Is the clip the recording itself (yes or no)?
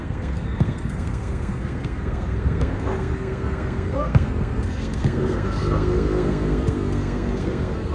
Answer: no